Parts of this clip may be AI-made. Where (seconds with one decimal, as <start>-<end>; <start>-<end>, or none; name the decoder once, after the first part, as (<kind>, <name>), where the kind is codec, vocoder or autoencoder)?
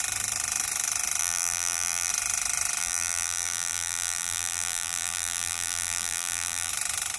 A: 1.2-2.1 (vocoder, BigVGAN v2); 2.8-6.7